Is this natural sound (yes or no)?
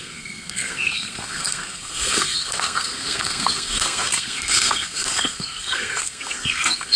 no